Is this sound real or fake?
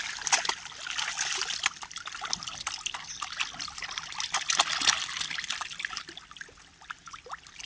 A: real